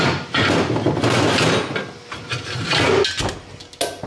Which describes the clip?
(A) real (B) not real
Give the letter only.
A